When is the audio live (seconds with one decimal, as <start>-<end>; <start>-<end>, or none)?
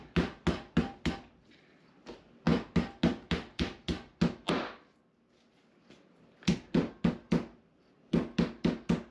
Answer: 0.0-9.1